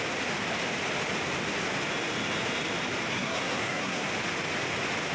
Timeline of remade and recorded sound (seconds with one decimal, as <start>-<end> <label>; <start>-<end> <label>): 0.0-3.1 recorded; 3.1-4.1 remade; 4.1-5.1 recorded